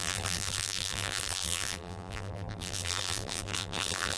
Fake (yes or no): yes